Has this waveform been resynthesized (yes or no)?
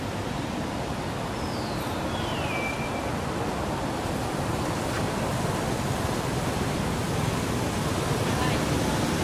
no